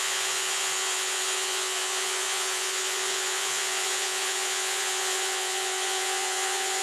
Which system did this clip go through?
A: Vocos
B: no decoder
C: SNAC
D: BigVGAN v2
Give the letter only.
A